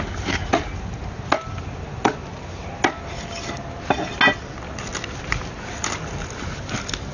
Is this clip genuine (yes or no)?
yes